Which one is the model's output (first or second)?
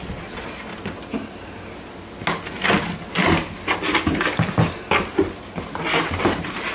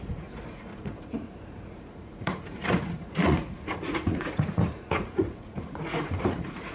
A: second